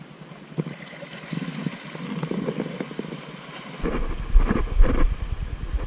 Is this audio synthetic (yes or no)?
no